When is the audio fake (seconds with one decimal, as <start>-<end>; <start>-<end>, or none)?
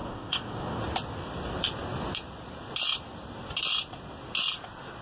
0.0-0.8